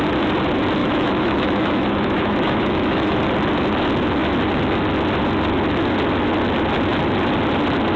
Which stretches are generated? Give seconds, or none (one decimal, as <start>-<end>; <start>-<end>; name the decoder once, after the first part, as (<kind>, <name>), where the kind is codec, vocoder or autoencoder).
0.8-3.2 (autoencoder, DAC-VAE)